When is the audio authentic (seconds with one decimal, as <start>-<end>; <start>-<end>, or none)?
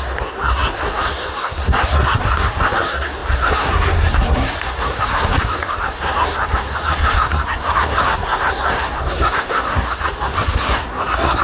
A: none